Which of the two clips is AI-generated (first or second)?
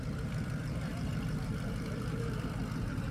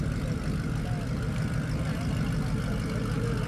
first